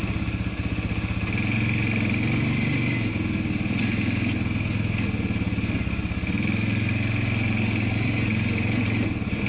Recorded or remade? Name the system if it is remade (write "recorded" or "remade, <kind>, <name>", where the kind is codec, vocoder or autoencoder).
recorded